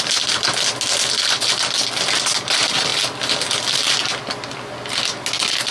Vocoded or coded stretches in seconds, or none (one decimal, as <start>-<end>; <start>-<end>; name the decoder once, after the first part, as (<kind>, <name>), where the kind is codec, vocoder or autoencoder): none